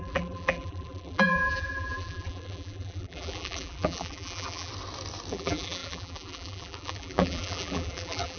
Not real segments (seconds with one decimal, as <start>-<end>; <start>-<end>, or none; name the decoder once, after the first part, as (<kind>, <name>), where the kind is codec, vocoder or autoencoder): 0.0-4.7 (vocoder, BigVGAN v2); 5.3-8.4